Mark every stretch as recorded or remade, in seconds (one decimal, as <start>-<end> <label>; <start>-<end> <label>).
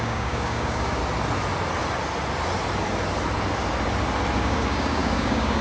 0.0-1.0 remade; 1.0-4.4 recorded; 4.4-5.6 remade